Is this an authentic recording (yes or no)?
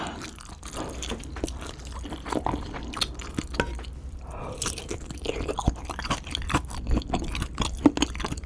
yes